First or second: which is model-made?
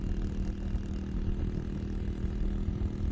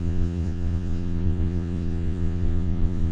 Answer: second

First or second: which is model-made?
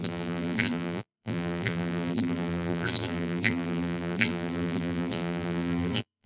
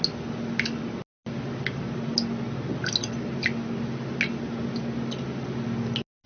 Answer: first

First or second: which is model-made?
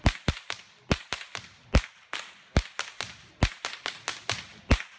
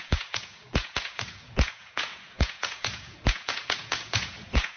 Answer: second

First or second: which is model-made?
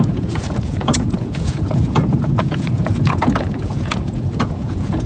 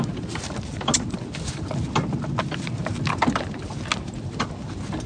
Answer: first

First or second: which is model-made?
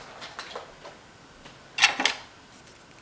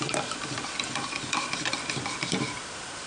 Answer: second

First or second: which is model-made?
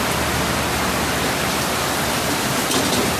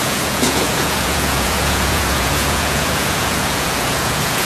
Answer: second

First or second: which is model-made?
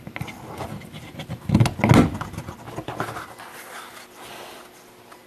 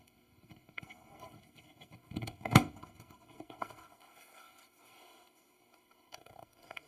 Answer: second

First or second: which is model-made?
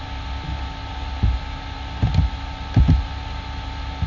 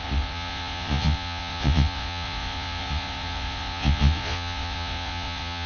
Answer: second